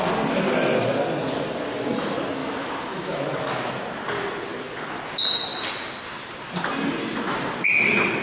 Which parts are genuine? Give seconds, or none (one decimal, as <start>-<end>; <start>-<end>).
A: 0.0-2.4; 3.4-8.2